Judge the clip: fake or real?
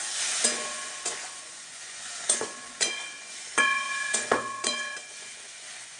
fake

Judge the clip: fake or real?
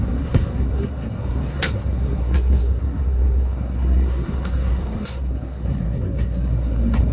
fake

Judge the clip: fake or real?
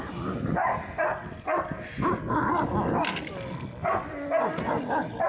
real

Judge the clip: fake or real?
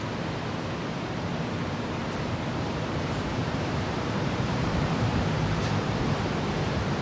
fake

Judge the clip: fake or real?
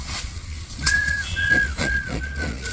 fake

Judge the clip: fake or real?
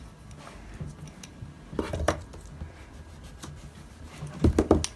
real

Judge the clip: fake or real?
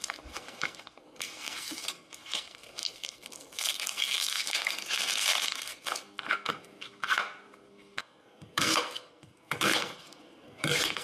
fake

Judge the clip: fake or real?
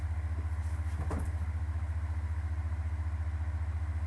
real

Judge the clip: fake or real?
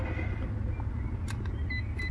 real